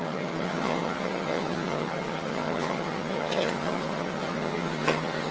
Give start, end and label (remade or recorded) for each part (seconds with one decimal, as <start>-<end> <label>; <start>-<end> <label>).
0.0-5.3 remade